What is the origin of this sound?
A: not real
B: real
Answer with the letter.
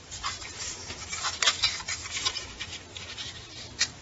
A